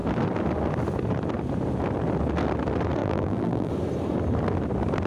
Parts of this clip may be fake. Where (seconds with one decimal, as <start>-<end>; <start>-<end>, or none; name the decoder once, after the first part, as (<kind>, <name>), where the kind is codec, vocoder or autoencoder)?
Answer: 3.0-3.7 (vocoder, BigVGAN v2)

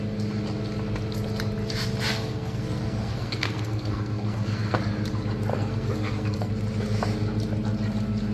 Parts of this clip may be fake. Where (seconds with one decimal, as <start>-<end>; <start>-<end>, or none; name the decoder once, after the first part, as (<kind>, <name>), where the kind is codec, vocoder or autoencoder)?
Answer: 2.1-4.8 (codec, SNAC); 5.5-6.5

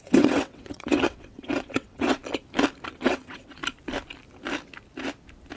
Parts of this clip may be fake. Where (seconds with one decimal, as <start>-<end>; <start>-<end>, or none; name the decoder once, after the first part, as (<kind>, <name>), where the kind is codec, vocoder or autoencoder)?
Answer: 0.0-2.2 (vocoder, WaveNeXt); 2.9-3.6

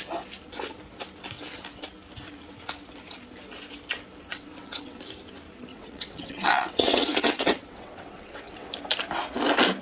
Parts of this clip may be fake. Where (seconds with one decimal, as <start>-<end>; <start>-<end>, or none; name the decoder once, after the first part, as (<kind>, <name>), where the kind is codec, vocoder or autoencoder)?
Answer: 4.3-5.0 (vocoder, WaveNeXt); 5.7-8.7

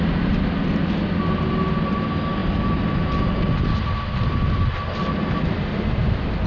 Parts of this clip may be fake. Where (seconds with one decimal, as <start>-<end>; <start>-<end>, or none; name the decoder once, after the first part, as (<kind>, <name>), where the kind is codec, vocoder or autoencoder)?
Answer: none